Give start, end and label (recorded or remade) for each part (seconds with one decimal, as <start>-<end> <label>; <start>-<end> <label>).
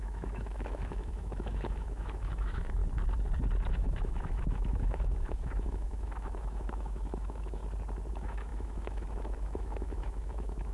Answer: 0.0-2.8 remade; 2.8-3.7 recorded; 3.7-7.6 remade; 7.6-8.1 recorded; 8.1-10.7 remade